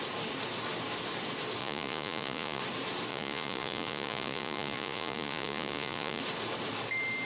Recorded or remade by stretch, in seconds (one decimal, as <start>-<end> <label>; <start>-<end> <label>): 0.0-1.6 recorded; 1.6-2.6 remade; 2.6-3.1 recorded; 3.1-6.2 remade; 6.2-7.3 recorded